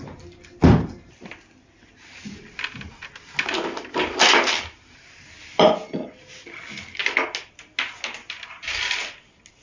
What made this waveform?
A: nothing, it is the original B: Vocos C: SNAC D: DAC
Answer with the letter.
A